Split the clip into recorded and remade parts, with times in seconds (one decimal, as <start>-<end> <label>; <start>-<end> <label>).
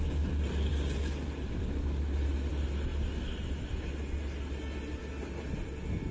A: 0.0-6.1 recorded